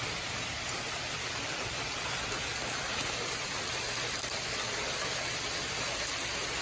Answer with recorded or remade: remade